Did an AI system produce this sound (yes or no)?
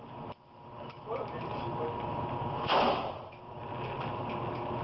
no